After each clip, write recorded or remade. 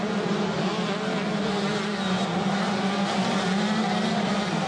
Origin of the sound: recorded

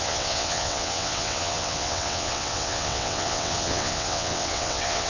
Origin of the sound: remade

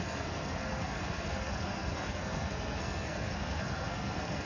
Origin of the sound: remade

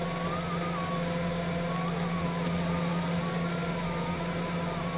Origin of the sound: recorded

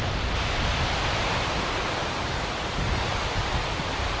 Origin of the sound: recorded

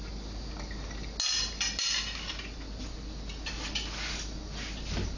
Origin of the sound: recorded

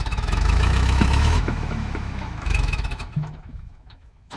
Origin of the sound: remade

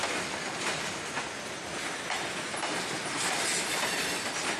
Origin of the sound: recorded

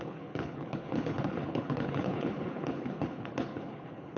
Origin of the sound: remade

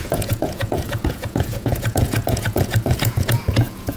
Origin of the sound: remade